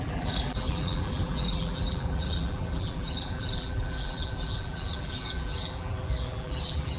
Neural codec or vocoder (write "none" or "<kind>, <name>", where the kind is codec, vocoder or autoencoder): vocoder, BigVGAN v2